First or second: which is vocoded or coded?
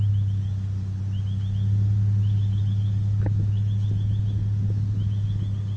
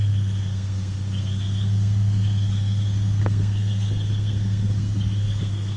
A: second